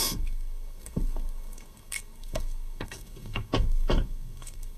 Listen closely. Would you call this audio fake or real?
fake